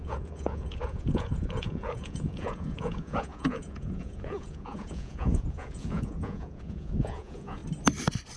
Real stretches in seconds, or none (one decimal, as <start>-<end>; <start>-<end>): 7.6-8.4